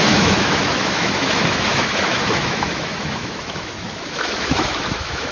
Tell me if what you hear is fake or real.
fake